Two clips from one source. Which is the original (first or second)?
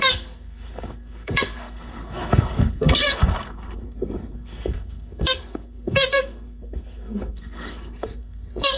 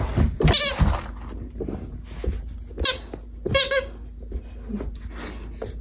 second